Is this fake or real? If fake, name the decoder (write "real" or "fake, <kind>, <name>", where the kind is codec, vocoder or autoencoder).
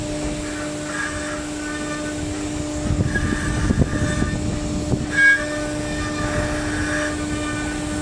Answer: real